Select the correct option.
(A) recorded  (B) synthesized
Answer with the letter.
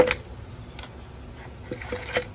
A